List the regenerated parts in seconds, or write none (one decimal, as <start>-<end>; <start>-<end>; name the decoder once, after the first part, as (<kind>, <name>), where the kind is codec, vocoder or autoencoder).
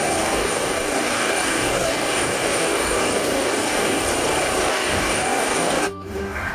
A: 0.0-4.1 (codec, DAC); 4.7-6.5